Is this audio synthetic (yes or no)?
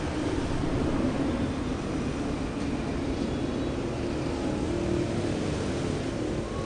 no